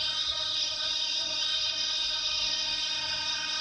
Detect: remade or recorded remade